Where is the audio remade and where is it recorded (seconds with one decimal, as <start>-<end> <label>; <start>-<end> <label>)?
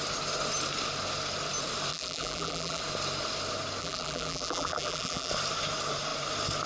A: 0.0-1.9 recorded; 1.9-2.8 remade; 2.8-3.8 recorded; 3.8-5.3 remade; 5.3-6.7 recorded